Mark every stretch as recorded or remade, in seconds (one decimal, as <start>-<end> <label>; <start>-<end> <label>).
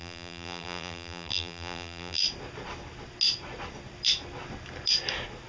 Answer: 0.0-2.2 remade; 2.2-5.5 recorded